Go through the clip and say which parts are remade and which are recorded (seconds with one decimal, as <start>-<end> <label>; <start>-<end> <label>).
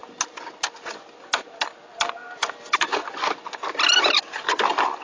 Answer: 0.0-5.0 recorded